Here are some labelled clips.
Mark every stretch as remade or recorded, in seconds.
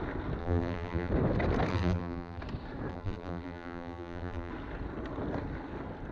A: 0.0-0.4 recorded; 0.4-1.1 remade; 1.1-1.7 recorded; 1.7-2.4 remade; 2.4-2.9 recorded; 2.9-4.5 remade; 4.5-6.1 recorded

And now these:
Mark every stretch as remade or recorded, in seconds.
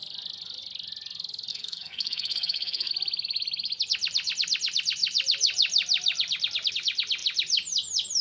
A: 0.0-1.5 recorded; 1.5-2.9 remade; 2.9-8.2 recorded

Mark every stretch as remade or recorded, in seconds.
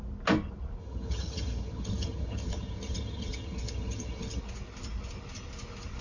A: 0.0-0.8 recorded; 0.8-4.4 remade; 4.4-6.0 recorded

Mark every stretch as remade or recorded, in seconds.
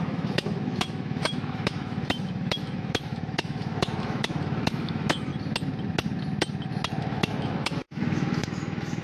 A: 0.0-5.3 remade; 5.3-7.0 recorded; 7.0-9.0 remade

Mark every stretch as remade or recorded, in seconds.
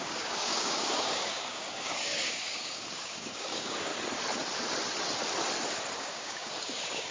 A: 0.0-3.9 remade; 3.9-6.0 recorded; 6.0-7.1 remade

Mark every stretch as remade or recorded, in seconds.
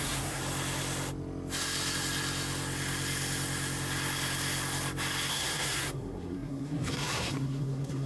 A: 0.0-0.4 remade; 0.4-5.3 recorded; 5.3-8.1 remade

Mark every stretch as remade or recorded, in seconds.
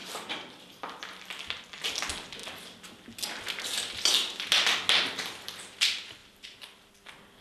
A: 0.0-0.6 remade; 0.6-6.2 recorded; 6.2-6.9 remade; 6.9-7.4 recorded